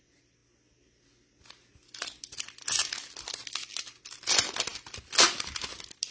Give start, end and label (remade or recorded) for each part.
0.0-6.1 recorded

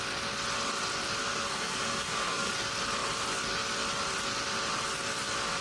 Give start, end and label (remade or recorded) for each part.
0.0-1.2 recorded; 1.2-2.5 remade; 2.5-5.6 recorded

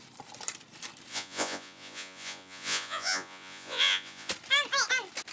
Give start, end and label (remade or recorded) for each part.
0.0-1.1 recorded; 1.1-4.3 remade; 4.3-5.3 recorded

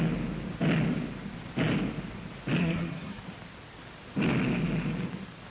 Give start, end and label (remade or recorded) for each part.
0.0-2.6 recorded; 2.6-3.2 remade; 3.2-5.5 recorded